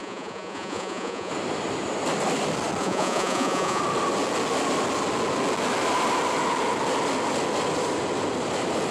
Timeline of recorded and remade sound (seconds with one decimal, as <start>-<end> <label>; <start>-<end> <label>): 0.0-1.3 remade; 1.3-2.8 recorded; 2.8-3.8 remade; 3.8-8.9 recorded